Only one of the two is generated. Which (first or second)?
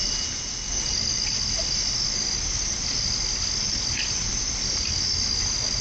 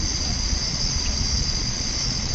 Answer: second